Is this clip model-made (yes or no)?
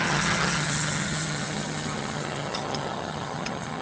yes